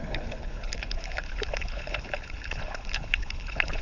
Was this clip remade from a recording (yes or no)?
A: yes